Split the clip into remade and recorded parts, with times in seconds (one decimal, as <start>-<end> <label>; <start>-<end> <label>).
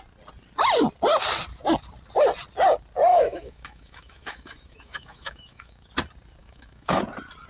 0.0-3.1 recorded; 3.1-5.9 remade; 5.9-6.4 recorded; 6.4-7.0 remade; 7.0-7.5 recorded